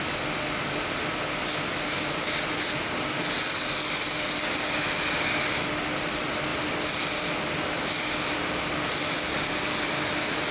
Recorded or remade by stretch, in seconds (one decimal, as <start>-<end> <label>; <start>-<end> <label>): 0.0-10.5 recorded